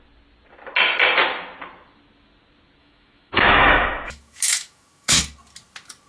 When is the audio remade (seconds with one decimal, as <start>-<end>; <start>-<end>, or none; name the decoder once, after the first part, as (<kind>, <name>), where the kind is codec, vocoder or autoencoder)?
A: 2.8-5.2 (autoencoder, DAC-VAE)